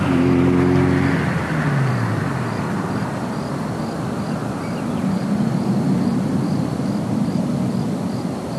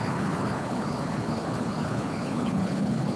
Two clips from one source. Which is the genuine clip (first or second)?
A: first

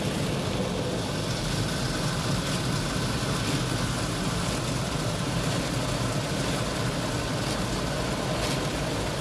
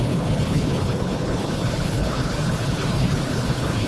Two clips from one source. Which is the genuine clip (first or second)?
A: first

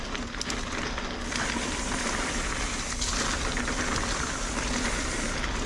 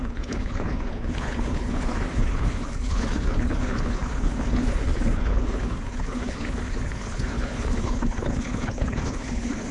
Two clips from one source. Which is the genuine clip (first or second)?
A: first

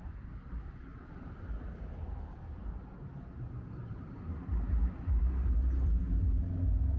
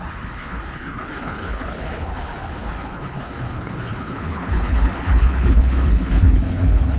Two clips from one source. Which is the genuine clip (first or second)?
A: first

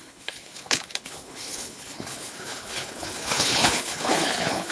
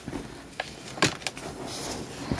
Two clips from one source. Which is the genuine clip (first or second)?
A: second